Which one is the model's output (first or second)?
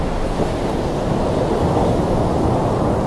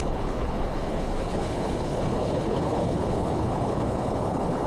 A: second